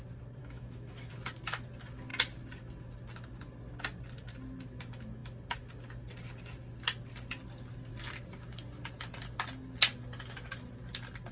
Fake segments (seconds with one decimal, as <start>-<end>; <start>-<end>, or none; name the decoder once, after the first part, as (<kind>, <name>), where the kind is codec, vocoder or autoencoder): 0.4-1.1 (autoencoder, DAC-VAE)